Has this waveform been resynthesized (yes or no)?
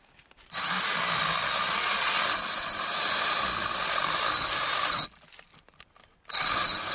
no